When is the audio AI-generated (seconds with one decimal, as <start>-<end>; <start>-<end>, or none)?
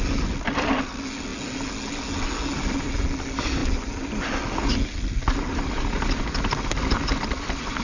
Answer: none